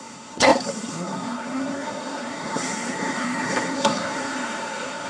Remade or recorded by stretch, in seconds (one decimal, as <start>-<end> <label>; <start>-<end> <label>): 0.0-5.1 remade